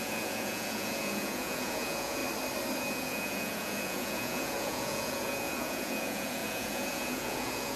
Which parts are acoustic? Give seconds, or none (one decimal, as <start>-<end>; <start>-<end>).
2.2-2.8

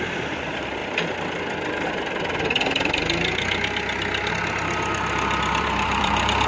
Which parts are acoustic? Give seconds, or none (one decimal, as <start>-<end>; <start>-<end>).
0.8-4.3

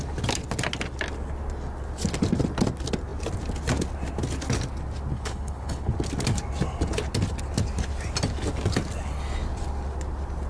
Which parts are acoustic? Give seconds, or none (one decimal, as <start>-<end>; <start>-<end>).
0.0-5.1; 5.9-10.5